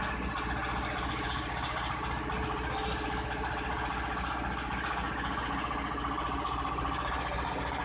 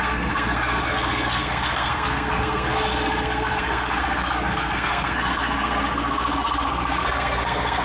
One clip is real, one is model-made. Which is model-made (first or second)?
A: second